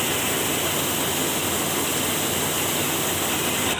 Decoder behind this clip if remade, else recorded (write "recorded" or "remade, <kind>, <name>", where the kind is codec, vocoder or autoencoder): recorded